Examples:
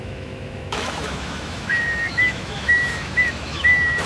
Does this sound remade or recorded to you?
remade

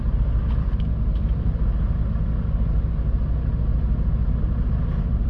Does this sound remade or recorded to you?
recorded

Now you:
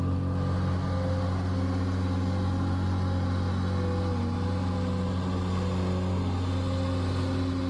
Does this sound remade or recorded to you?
recorded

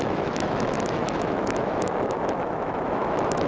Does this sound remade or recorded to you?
remade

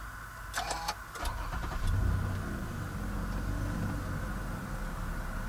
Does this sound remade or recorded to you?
recorded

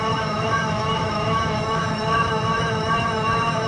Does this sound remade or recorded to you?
remade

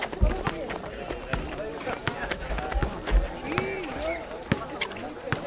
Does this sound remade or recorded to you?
recorded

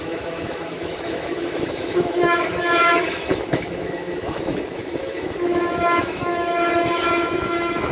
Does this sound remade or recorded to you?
remade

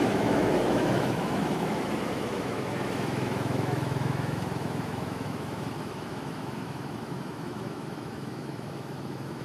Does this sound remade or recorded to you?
remade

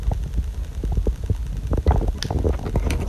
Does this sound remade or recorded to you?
recorded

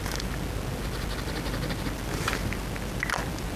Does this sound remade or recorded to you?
recorded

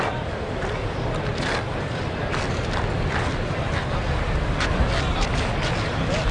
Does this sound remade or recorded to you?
recorded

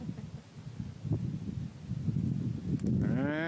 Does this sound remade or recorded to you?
recorded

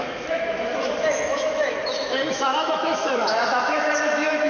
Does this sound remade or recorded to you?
remade